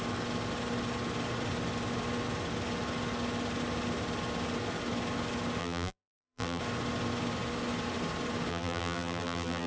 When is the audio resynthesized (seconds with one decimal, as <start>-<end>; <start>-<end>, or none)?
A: 5.6-6.6; 8.5-9.7